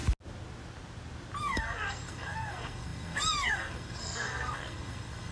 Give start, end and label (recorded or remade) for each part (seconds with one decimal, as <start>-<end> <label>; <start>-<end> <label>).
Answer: 0.0-1.4 recorded; 1.4-5.3 remade